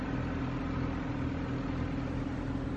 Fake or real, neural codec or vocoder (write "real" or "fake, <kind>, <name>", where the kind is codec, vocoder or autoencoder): real